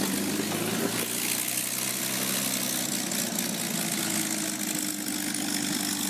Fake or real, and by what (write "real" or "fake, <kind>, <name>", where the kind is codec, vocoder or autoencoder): real